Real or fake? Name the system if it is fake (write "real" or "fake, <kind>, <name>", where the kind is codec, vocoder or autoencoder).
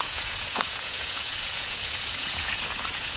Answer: fake, vocoder, Vocos